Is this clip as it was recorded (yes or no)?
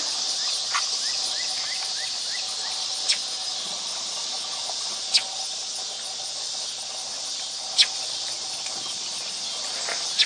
yes